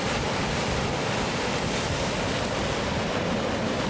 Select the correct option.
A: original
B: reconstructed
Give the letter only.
A